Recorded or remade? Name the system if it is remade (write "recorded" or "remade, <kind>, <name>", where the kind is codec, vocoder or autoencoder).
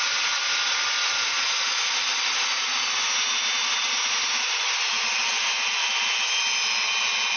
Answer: recorded